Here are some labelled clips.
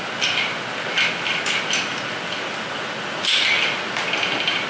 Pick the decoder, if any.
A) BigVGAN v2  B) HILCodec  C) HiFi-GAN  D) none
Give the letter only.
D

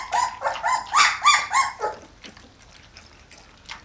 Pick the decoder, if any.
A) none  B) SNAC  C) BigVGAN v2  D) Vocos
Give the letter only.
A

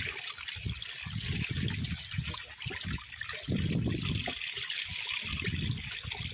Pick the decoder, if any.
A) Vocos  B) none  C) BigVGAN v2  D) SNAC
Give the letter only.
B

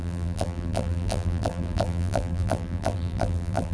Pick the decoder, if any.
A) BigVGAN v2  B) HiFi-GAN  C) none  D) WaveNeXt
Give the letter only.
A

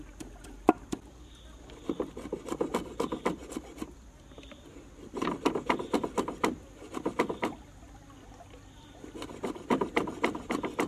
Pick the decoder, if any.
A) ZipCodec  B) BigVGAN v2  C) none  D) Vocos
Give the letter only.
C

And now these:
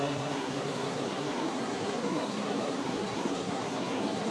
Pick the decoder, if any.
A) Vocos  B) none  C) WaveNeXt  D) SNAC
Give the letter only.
D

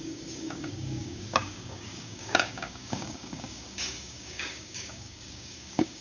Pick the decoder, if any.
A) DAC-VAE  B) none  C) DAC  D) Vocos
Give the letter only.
C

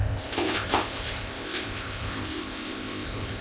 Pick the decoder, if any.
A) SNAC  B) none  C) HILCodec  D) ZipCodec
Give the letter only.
D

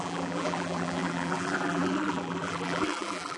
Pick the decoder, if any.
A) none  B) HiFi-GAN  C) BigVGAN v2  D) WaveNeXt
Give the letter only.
C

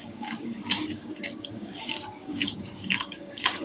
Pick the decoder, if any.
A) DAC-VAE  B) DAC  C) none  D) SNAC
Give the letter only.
B